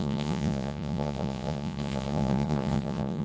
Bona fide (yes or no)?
no